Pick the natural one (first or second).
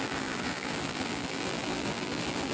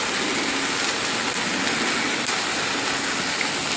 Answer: second